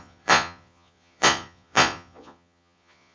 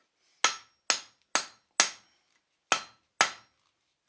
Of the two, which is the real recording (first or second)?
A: second